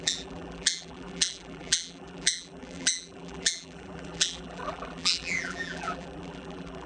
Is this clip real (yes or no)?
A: no